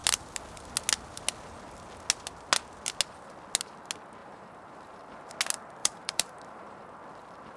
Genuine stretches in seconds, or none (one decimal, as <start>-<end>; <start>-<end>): 0.0-4.2; 5.3-5.8; 6.6-7.6